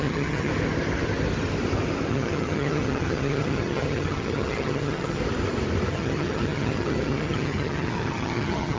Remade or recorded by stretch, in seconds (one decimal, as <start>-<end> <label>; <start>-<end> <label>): 0.0-0.5 remade; 0.5-2.1 recorded; 2.1-5.2 remade; 5.2-5.9 recorded; 5.9-8.8 remade